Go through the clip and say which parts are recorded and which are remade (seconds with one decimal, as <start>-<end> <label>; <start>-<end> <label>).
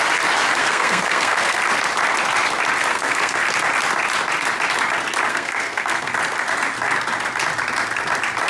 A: 0.0-0.6 recorded; 0.6-1.6 remade; 1.6-2.9 recorded; 2.9-3.4 remade; 3.4-5.3 recorded; 5.3-6.1 remade; 6.1-8.5 recorded